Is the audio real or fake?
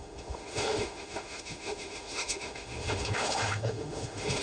fake